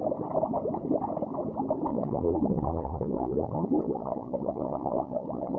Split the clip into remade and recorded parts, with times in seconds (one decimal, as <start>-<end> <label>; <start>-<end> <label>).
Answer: 0.0-1.9 recorded; 1.9-5.6 remade